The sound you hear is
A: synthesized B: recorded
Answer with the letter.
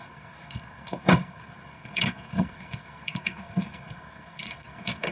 A